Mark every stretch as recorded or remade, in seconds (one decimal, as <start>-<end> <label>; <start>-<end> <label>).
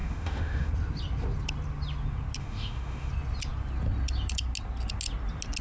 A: 0.0-0.7 remade; 0.7-2.4 recorded; 2.4-3.1 remade; 3.1-5.6 recorded